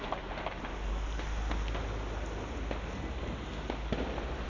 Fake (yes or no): no